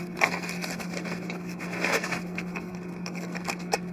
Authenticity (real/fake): fake